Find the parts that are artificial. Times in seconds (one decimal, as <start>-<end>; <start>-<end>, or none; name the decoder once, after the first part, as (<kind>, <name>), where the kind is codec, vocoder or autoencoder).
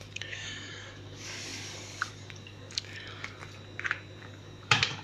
0.0-3.4 (codec, DAC); 4.2-5.0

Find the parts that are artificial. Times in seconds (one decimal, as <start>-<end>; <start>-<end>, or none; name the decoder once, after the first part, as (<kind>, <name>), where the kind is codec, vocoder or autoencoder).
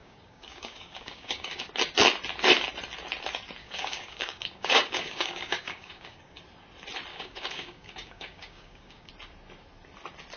0.0-1.6 (codec, DAC); 3.6-6.4; 7.1-9.1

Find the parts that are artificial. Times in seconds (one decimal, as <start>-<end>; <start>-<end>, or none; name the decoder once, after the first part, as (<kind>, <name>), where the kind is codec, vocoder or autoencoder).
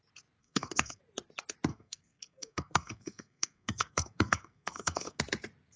0.4-1.0 (codec, SNAC); 1.7-5.2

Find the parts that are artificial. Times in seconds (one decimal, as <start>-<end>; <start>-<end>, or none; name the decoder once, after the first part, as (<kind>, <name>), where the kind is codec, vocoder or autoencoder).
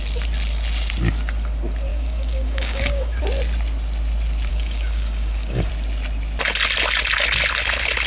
1.9-3.2 (codec, DAC); 4.5-5.7